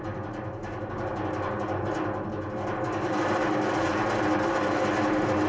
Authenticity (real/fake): real